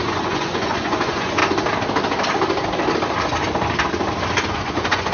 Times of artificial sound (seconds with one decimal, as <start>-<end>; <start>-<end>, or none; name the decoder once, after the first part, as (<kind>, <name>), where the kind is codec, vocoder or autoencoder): 0.0-1.4 (vocoder, Vocos); 4.5-5.1